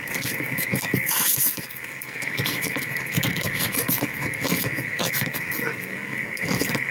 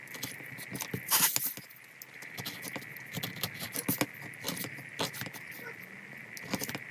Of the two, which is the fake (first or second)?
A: first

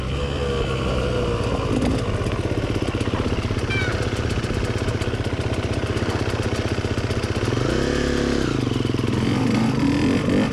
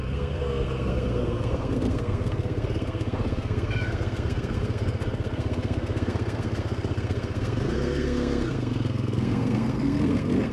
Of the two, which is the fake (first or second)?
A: second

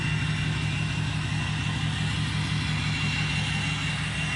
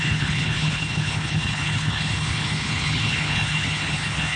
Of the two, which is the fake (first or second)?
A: second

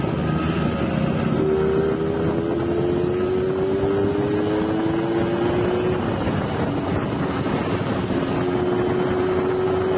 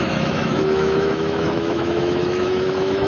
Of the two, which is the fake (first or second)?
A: second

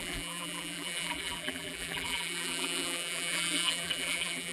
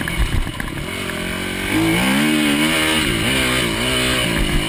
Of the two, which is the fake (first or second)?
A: first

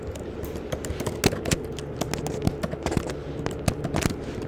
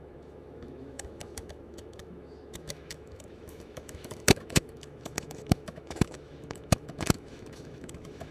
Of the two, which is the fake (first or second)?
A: second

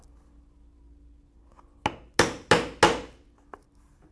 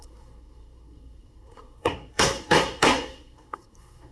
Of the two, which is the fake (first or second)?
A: second